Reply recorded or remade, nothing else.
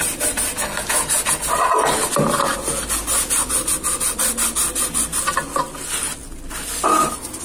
recorded